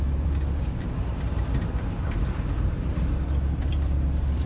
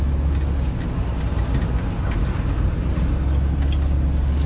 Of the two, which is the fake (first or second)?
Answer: first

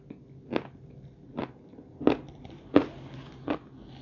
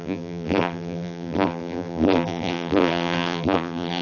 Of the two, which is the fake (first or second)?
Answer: second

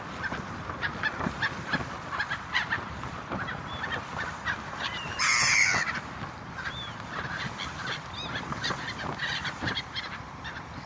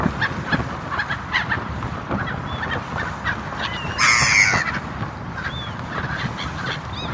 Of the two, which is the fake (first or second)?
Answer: first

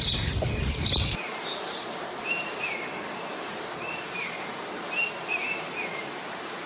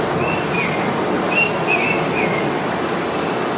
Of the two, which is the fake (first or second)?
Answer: first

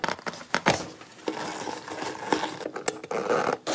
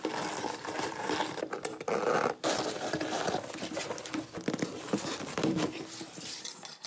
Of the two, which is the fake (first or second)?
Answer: second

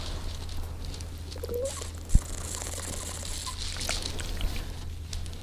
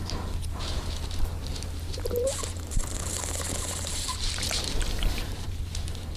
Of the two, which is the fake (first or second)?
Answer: second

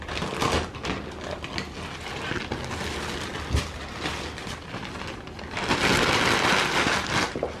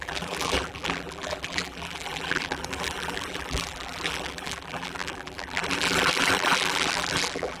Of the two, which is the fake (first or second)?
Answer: second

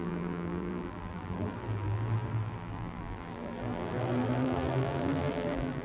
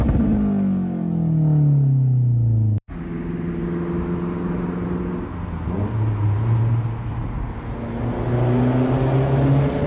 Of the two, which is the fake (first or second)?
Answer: first